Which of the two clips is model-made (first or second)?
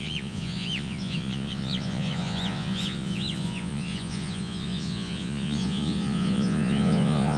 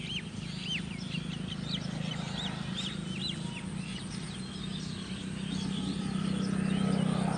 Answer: first